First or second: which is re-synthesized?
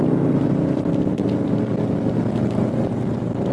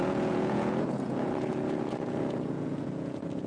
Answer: second